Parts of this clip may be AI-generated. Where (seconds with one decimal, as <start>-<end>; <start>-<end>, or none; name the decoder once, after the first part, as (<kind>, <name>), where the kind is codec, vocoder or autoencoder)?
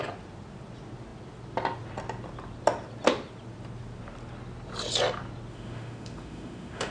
5.5-6.9 (autoencoder, DAC-VAE)